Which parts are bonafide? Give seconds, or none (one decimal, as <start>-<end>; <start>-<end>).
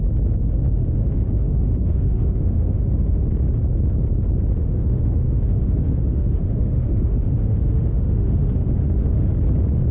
0.0-0.4; 3.3-4.6; 9.3-9.9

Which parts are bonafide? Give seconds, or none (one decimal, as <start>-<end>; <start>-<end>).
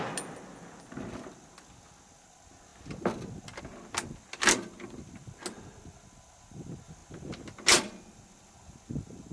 0.0-9.3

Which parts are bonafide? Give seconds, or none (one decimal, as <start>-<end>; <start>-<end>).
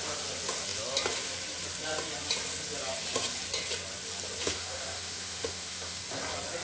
0.0-4.4; 6.0-6.6